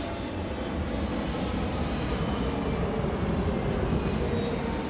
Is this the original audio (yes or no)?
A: yes